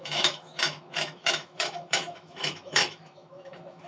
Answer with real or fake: fake